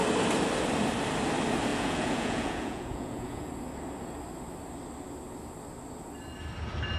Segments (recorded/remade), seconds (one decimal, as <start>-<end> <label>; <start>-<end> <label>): 0.0-1.7 recorded; 1.7-3.5 remade; 3.5-7.0 recorded